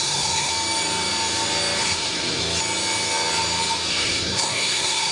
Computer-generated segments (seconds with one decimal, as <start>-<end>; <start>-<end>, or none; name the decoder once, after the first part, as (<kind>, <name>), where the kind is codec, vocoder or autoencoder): 0.0-0.5 (codec, SNAC); 1.8-2.4; 3.9-5.1